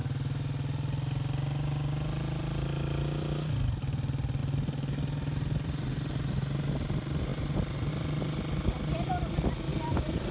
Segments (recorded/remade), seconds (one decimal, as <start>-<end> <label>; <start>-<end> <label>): 0.0-7.3 recorded; 7.3-7.9 remade; 7.9-10.3 recorded